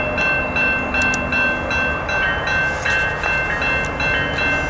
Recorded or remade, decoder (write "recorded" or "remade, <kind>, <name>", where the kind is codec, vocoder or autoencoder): recorded